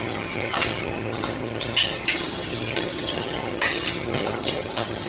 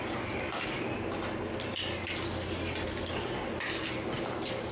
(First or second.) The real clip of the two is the second